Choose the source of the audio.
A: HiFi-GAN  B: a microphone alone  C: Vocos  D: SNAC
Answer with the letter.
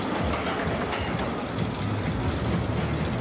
B